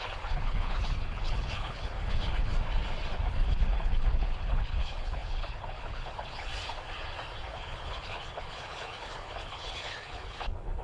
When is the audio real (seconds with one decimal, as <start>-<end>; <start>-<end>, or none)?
2.5-3.3; 6.5-7.5